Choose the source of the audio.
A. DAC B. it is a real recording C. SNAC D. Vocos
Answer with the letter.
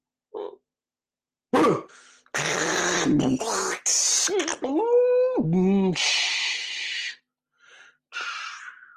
B